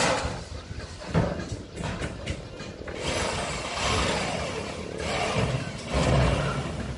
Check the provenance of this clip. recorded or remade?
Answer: recorded